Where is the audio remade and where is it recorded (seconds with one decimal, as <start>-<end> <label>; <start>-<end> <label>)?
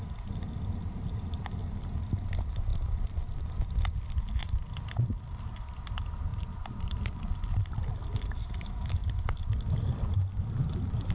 0.0-6.3 recorded; 6.3-7.0 remade; 7.0-11.1 recorded